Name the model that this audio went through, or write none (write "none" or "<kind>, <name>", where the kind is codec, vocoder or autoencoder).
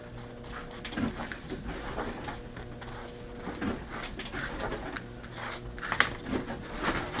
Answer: none